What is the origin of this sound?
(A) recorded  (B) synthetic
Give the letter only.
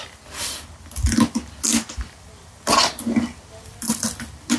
A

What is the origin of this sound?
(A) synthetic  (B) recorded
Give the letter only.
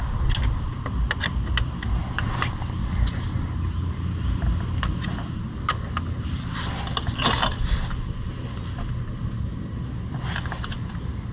B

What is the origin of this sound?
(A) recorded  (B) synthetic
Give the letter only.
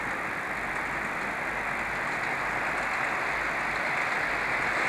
A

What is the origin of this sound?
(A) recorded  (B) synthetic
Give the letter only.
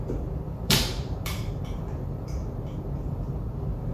B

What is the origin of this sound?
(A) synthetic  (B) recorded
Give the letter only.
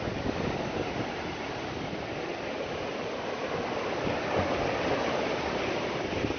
B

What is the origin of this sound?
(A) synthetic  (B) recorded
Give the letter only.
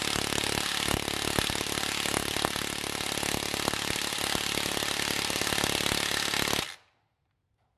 B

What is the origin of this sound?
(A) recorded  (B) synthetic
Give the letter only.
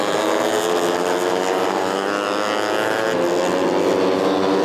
A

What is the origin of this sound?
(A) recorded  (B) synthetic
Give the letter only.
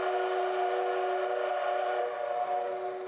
A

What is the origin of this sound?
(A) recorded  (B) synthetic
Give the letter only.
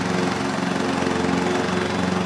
A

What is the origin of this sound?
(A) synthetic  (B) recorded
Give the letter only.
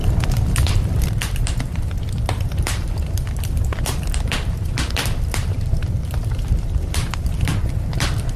A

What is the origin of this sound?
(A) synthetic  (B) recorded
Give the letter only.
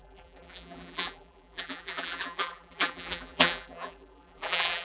A